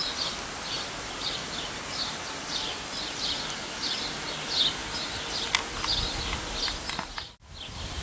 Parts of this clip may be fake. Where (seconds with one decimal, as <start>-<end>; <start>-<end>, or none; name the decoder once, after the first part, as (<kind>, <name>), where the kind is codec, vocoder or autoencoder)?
1.4-2.6 (vocoder, BigVGAN v2)